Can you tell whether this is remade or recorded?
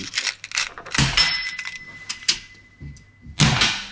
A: recorded